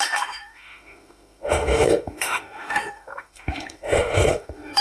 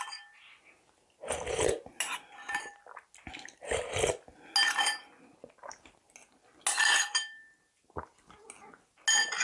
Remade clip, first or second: first